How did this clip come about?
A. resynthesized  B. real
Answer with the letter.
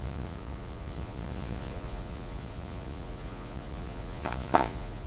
A